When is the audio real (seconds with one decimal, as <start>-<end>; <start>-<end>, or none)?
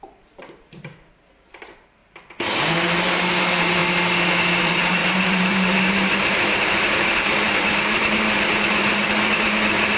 2.0-2.6; 3.8-4.6